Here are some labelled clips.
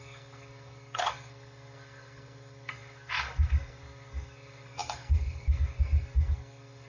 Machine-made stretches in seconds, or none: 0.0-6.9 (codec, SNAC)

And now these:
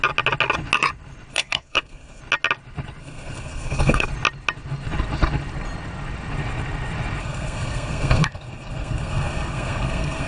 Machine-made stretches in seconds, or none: 1.3-2.2 (codec, SNAC); 3.0-4.1; 7.2-10.3

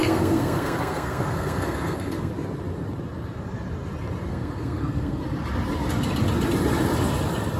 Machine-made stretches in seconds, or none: 0.0-2.3 (codec, SNAC); 4.3-5.2